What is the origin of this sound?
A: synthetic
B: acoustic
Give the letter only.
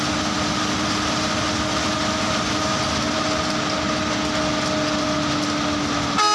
B